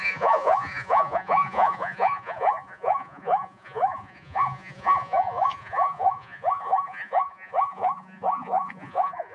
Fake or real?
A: fake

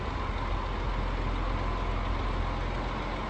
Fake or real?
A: real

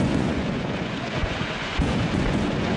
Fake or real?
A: fake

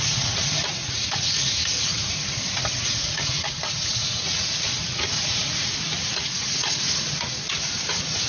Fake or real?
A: fake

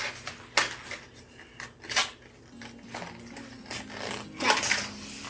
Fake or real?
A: real